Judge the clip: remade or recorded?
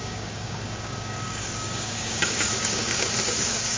remade